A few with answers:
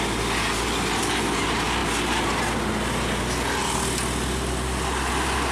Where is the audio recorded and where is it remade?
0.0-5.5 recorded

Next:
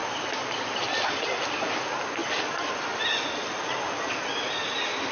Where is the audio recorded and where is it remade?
0.0-5.1 recorded

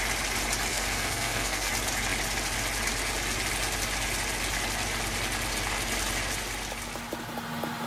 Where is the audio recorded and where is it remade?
0.0-0.7 recorded; 0.7-1.7 remade; 1.7-7.9 recorded

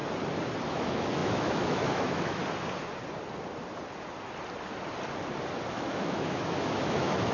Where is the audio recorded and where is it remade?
0.0-0.7 recorded; 0.7-2.4 remade; 2.4-5.7 recorded; 5.7-7.3 remade